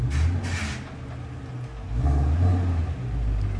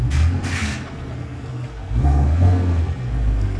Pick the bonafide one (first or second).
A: first